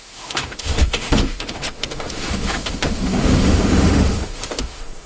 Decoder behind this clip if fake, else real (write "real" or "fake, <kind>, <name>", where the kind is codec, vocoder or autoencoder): fake, autoencoder, DAC-VAE